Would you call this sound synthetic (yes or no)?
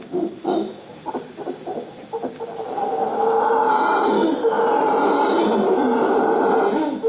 no